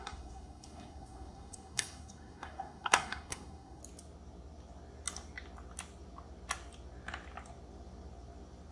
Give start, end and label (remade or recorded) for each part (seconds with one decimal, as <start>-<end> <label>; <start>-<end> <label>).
0.0-3.8 remade; 3.8-8.7 recorded